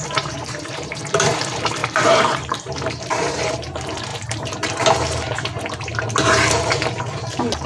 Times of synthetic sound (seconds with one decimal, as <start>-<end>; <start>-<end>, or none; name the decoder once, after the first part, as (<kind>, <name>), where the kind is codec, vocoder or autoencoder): 0.0-4.1 (vocoder, BigVGAN v2); 7.0-7.7